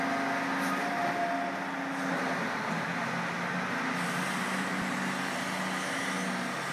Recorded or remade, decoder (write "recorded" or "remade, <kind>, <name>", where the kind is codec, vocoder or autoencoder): recorded